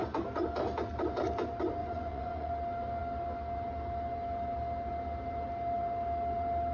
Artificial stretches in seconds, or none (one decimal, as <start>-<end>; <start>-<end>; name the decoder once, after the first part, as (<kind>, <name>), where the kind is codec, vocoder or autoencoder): 1.8-2.5 (vocoder, Vocos)